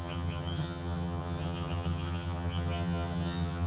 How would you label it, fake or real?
fake